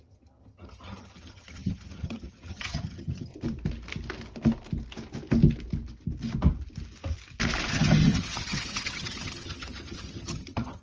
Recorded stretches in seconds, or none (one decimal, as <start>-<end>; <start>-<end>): 3.3-7.7